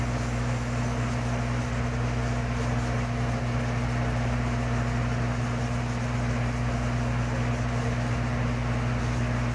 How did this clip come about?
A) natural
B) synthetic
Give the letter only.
A